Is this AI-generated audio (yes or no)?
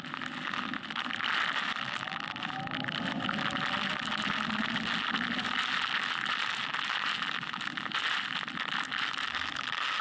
no